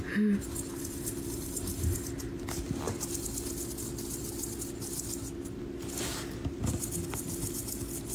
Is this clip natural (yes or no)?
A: yes